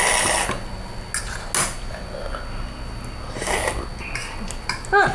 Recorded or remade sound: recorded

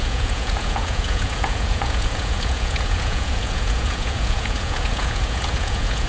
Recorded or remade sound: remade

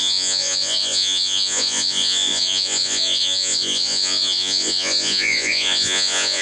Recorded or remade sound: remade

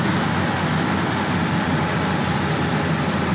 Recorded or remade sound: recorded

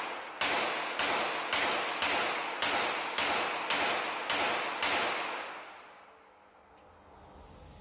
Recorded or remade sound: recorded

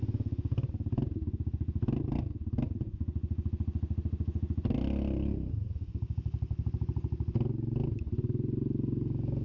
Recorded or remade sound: recorded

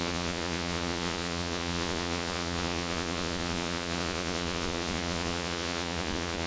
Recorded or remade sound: remade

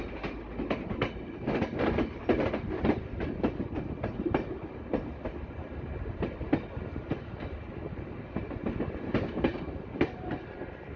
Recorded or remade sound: recorded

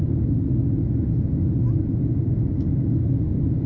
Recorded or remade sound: recorded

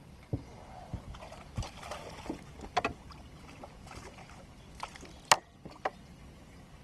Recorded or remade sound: recorded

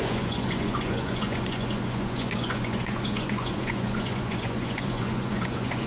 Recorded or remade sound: remade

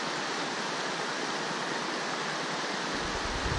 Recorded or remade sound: recorded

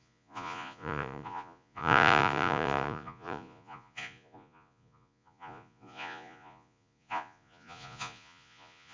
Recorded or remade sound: remade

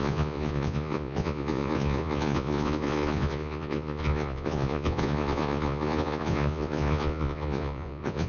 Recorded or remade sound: remade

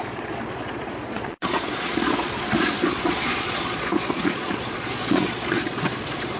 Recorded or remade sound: remade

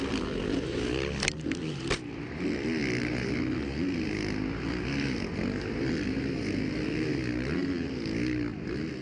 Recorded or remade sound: recorded